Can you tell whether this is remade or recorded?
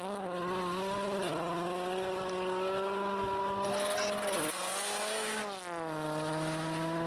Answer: recorded